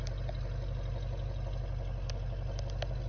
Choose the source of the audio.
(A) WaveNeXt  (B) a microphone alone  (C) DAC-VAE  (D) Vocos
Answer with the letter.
B